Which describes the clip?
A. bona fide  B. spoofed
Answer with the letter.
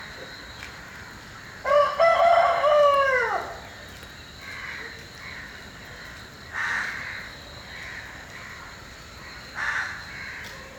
A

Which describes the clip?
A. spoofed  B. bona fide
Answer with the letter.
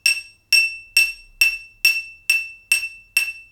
B